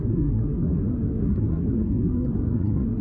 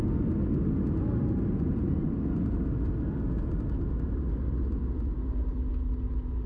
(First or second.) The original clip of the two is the second